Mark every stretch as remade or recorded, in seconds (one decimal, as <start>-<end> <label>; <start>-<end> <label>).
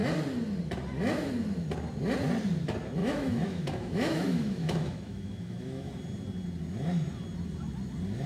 0.0-3.0 recorded; 3.0-5.9 remade; 5.9-8.3 recorded